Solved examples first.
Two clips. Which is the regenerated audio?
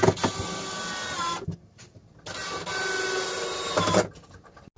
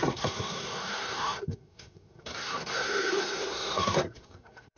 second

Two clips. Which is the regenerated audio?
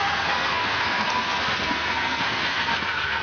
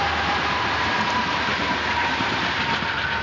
first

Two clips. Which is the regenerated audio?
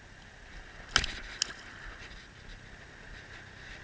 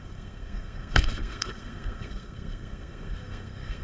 second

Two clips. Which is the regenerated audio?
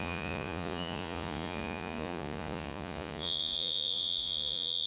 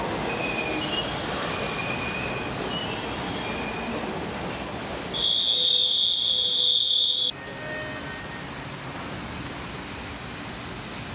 first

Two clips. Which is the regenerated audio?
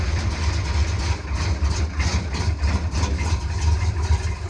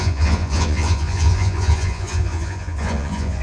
second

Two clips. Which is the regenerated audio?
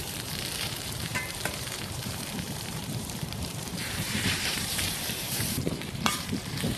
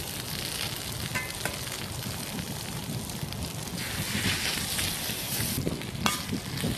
first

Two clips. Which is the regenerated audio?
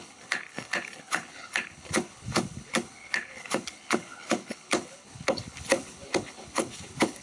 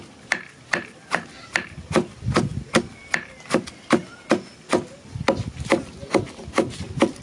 first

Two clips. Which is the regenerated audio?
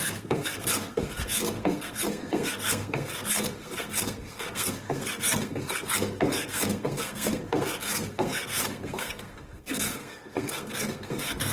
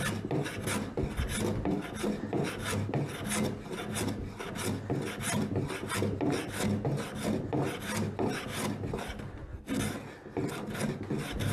first